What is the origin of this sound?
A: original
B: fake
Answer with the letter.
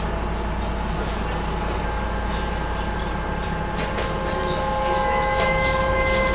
A